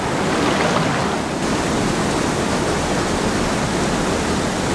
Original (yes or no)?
yes